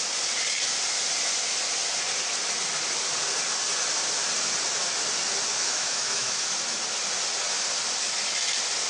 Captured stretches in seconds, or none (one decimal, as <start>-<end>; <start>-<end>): 0.0-5.5; 6.5-8.9